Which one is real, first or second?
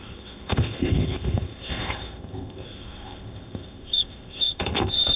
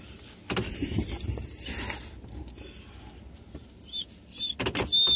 second